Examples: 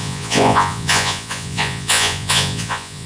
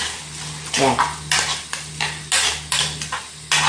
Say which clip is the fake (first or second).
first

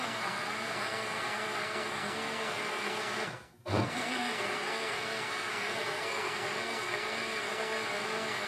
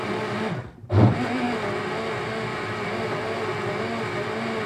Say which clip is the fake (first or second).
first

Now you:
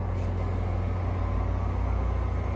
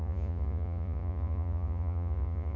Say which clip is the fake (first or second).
second